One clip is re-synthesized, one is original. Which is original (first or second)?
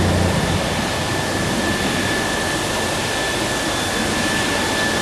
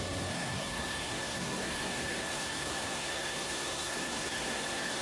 first